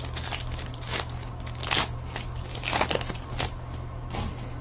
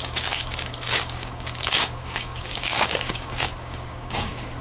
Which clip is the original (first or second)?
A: first